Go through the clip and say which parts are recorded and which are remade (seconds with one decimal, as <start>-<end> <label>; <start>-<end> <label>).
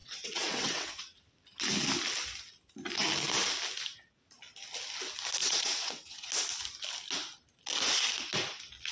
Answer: 0.0-1.2 remade; 1.2-5.4 recorded; 5.4-6.3 remade; 6.3-8.9 recorded